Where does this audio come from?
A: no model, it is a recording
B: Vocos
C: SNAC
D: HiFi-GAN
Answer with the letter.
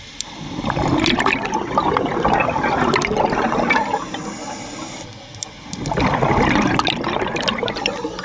A